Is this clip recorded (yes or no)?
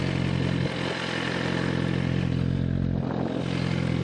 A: yes